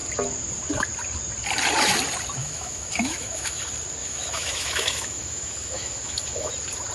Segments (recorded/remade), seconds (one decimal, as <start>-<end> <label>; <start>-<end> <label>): 0.0-2.4 recorded; 2.4-3.6 remade; 3.6-4.0 recorded; 4.0-6.5 remade; 6.5-6.9 recorded